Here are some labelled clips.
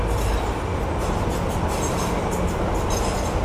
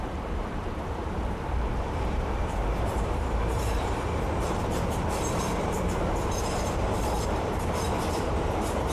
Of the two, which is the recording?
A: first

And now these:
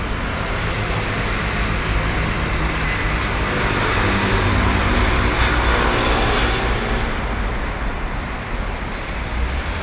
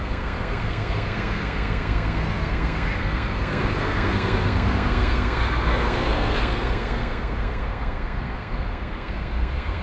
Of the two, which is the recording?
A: first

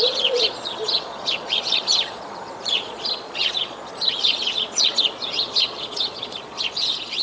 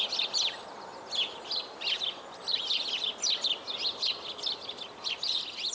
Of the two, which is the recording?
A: second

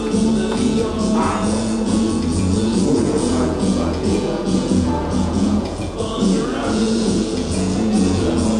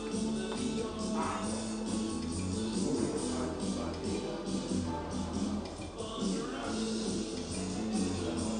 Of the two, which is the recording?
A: second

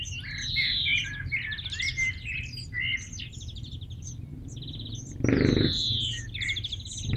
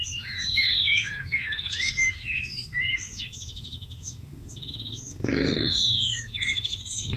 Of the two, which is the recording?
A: first